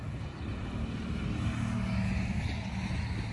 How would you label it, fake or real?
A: real